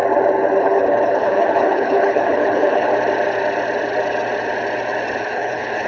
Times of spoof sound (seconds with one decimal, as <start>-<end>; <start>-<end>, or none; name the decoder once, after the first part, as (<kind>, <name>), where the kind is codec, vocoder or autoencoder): 0.6-2.9 (codec, HILCodec); 5.2-5.9